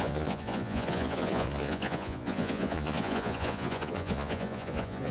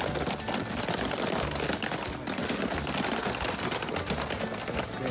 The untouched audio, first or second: second